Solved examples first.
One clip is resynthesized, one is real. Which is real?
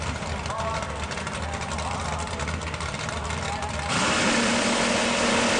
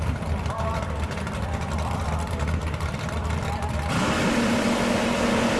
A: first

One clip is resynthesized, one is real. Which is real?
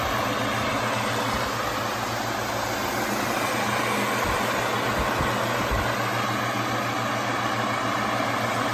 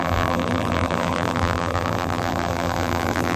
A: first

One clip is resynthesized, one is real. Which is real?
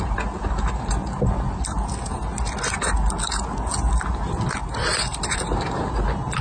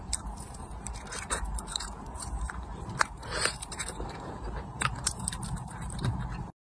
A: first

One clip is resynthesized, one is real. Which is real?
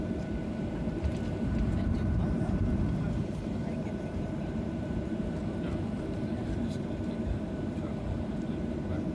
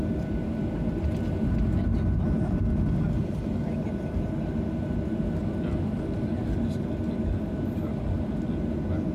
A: second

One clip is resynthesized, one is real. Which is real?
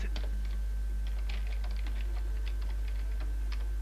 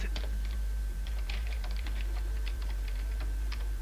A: first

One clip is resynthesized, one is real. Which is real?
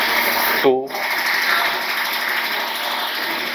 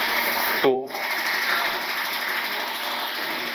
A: first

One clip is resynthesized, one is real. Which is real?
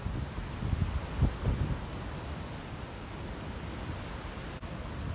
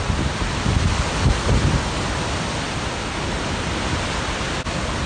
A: first